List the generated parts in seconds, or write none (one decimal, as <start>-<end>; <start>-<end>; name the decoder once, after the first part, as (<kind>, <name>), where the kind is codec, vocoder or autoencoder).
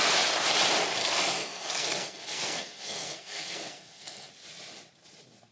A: 1.0-4.3 (codec, SNAC)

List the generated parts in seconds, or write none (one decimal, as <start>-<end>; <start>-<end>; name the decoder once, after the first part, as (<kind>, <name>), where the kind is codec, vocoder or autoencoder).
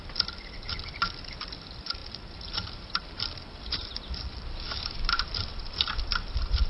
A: none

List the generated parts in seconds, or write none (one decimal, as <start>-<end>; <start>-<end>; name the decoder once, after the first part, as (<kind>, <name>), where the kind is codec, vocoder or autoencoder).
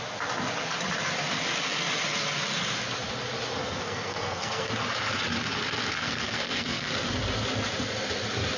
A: 3.6-4.7 (codec, SNAC); 6.0-6.9